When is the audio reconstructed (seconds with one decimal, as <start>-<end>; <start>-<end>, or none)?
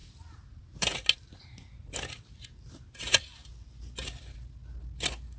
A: none